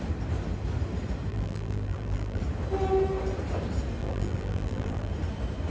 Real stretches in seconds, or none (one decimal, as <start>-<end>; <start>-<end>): 0.0-1.3; 2.4-4.0; 5.1-5.7